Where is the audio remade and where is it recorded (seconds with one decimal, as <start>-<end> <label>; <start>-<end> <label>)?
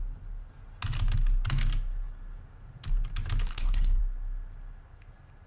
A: 0.0-3.5 recorded; 3.5-4.0 remade; 4.0-5.5 recorded